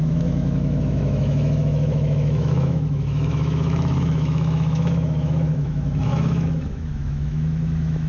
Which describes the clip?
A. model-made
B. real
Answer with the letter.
A